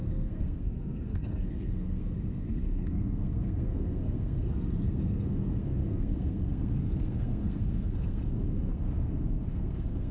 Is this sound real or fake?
fake